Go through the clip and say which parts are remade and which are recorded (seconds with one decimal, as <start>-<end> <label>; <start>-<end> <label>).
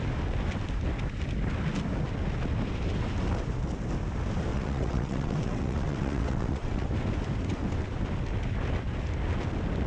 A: 0.0-4.5 recorded; 4.5-6.9 remade; 6.9-9.9 recorded